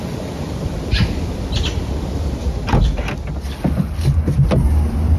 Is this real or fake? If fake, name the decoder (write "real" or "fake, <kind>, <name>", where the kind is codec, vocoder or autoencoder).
real